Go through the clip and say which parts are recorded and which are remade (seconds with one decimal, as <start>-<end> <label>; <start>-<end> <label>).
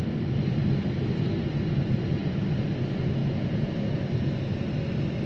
0.0-3.2 recorded; 3.2-3.7 remade; 3.7-5.3 recorded